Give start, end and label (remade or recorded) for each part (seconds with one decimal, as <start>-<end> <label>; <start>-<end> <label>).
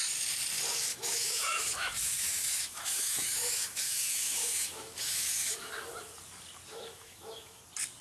0.0-0.9 recorded; 0.9-5.7 remade; 5.7-6.7 recorded; 6.7-7.6 remade; 7.6-8.0 recorded